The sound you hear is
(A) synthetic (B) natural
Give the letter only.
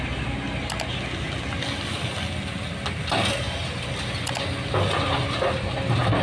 B